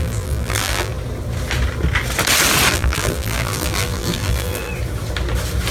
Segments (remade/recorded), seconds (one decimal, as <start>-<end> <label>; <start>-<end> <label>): 0.0-0.9 remade; 0.9-2.7 recorded; 2.7-4.7 remade; 4.7-5.7 recorded